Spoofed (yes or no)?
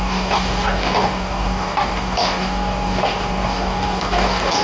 yes